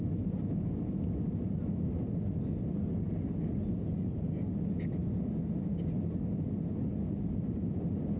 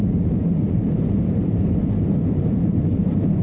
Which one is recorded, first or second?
first